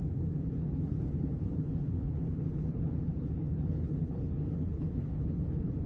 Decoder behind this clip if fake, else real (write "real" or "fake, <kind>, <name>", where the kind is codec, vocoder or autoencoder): fake, codec, HILCodec